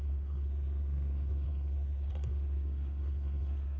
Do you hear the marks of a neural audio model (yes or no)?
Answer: yes